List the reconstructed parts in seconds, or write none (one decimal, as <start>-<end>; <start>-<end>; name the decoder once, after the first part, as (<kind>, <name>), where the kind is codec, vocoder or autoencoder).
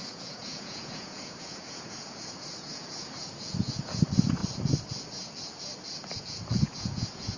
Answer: 0.0-4.4 (vocoder, Vocos); 6.2-7.4